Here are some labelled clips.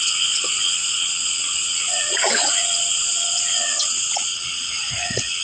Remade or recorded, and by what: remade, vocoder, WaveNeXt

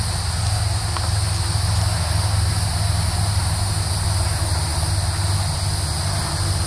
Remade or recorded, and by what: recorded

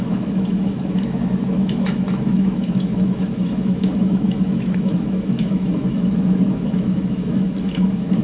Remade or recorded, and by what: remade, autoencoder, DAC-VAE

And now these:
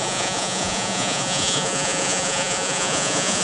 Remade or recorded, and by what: remade, vocoder, Vocos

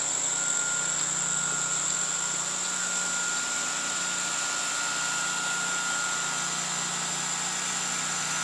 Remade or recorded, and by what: recorded